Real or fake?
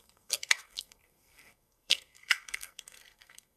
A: fake